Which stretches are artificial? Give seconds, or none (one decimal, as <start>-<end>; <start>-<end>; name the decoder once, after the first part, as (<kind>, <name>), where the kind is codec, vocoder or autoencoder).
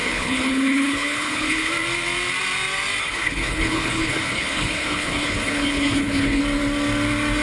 0.0-1.7 (codec, HILCodec); 3.0-6.4